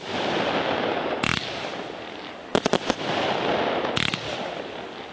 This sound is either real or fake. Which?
real